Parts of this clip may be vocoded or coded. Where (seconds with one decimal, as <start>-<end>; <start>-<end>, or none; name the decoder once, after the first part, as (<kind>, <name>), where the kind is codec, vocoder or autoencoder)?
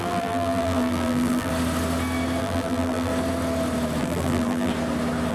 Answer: 0.0-1.5 (vocoder, BigVGAN v2); 2.4-3.1; 4.0-4.7